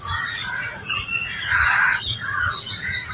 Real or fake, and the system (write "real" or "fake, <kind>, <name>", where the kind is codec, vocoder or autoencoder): fake, vocoder, Vocos